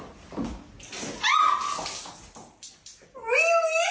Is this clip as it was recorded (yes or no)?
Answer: yes